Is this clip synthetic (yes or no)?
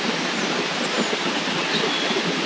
no